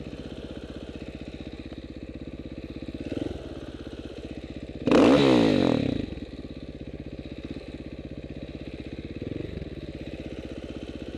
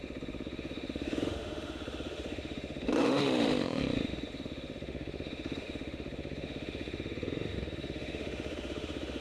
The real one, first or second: first